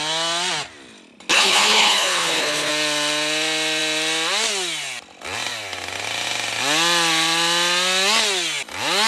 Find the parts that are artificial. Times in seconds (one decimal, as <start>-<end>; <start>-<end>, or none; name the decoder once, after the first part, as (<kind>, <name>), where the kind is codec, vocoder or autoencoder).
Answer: 1.3-2.7 (codec, HILCodec)